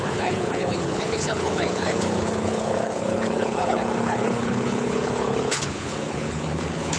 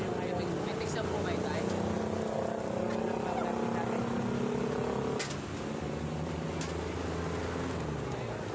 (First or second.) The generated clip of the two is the first